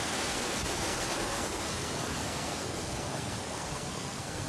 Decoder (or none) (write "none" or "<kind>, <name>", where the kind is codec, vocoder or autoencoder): codec, SNAC